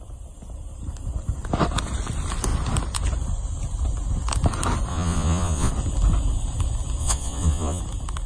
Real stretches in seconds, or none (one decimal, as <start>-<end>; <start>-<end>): 0.0-4.9; 5.7-7.0; 7.8-8.3